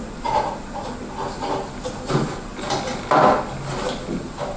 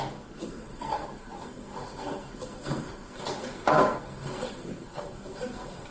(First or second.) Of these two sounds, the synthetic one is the second